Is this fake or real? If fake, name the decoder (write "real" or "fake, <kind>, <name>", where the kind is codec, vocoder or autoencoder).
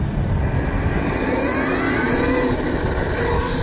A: real